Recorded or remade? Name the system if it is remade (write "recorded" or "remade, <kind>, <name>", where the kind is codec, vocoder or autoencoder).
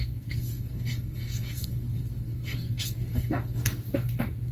remade, codec, SNAC